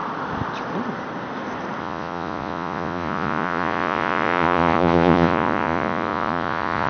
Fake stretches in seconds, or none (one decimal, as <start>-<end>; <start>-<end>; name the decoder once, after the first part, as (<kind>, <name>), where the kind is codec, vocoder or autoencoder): 1.8-6.9 (vocoder, Vocos)